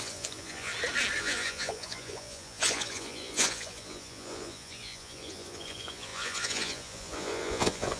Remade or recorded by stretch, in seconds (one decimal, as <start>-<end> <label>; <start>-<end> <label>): 0.0-0.7 remade; 0.7-1.2 recorded; 1.2-8.0 remade